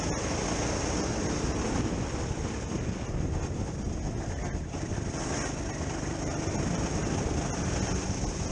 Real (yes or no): yes